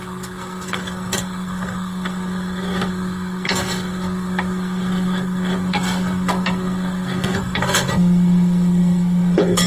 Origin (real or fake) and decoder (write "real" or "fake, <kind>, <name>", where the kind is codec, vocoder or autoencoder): fake, codec, SNAC